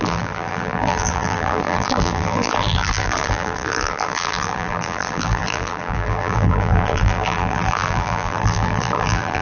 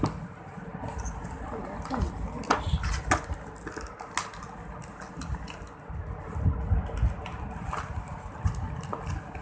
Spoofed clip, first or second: first